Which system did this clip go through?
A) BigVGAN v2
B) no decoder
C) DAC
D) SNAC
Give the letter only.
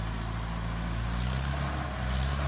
B